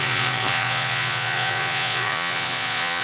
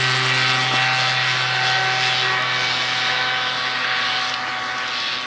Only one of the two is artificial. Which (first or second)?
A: first